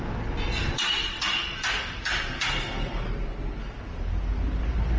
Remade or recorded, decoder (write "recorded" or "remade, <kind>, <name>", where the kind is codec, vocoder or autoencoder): recorded